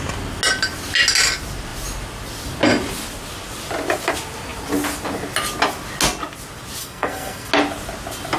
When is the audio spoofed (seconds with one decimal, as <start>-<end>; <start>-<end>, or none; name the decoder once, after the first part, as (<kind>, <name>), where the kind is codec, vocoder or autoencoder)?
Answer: 6.8-7.5 (codec, SNAC)